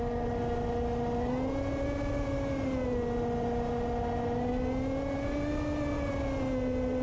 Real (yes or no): yes